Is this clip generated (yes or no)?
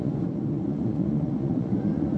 yes